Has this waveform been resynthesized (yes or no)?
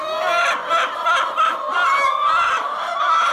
no